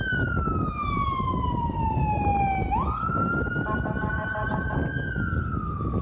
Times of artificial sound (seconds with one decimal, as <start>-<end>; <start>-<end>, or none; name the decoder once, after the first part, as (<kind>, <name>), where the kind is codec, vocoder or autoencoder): 0.8-1.8 (vocoder, BigVGAN v2)